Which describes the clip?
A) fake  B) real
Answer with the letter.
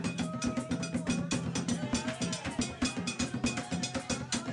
B